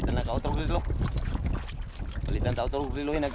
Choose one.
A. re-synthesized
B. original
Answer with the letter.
B